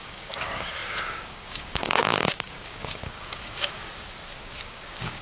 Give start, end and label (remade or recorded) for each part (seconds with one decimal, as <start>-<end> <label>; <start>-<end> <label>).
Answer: 0.0-3.8 remade; 3.8-4.4 recorded; 4.4-5.2 remade